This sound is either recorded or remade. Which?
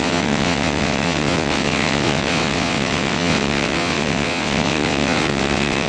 remade